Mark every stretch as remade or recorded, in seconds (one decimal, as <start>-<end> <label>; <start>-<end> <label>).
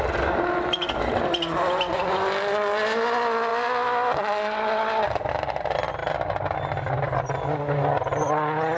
0.0-8.8 recorded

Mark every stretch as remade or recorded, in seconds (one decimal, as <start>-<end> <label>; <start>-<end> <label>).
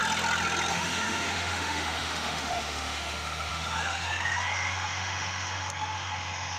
0.0-0.7 recorded; 0.7-6.6 remade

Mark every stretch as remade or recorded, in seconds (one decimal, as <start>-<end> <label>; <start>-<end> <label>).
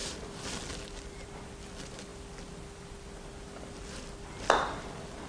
0.0-5.3 recorded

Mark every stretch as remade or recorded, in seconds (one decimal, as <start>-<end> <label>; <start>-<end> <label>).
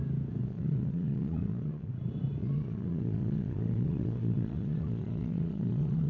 0.0-0.4 recorded; 0.4-1.9 remade; 1.9-2.4 recorded; 2.4-6.1 remade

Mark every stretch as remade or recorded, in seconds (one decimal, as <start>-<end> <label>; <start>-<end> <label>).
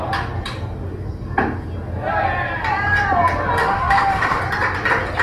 0.0-3.6 recorded; 3.6-4.4 remade; 4.4-5.2 recorded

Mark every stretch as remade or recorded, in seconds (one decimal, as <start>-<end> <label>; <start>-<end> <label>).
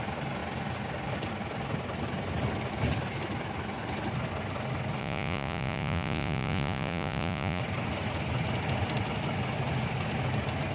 0.0-5.0 recorded; 5.0-7.6 remade; 7.6-10.7 recorded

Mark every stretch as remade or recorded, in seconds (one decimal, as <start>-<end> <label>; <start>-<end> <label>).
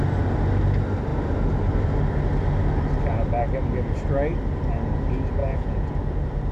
0.0-5.4 recorded; 5.4-5.9 remade; 5.9-6.5 recorded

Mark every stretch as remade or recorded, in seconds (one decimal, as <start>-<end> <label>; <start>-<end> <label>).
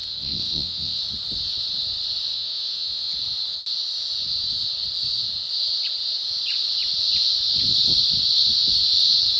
0.0-1.0 remade; 1.0-2.3 recorded; 2.3-3.1 remade; 3.1-9.4 recorded